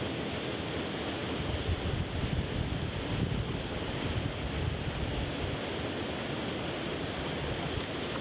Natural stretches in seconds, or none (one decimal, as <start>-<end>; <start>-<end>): 0.0-8.2